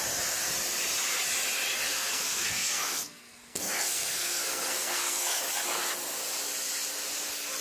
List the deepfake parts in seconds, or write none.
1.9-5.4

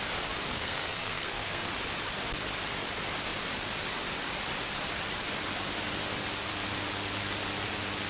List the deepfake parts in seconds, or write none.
0.5-1.7

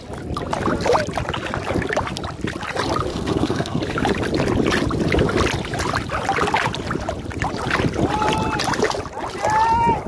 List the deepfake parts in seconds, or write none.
3.1-3.8

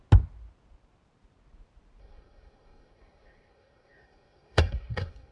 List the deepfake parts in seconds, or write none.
2.0-5.3

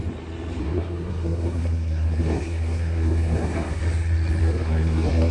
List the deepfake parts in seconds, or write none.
0.6-3.8; 4.4-5.3

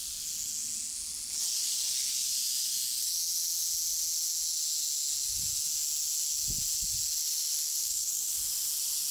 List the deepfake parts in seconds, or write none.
7.8-8.3